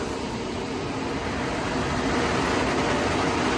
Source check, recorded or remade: recorded